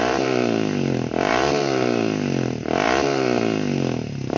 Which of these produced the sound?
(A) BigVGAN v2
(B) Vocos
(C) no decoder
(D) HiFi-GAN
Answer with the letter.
A